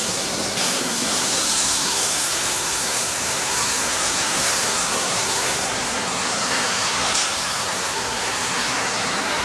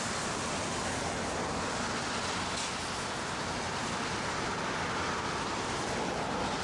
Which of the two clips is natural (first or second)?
second